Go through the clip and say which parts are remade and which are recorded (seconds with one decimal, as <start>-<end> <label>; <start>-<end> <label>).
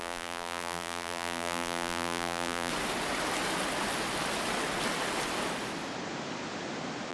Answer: 0.0-2.7 remade; 2.7-7.1 recorded